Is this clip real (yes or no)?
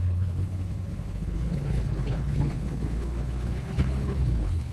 no